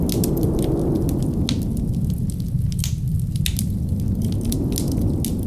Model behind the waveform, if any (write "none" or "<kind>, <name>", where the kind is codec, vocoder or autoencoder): none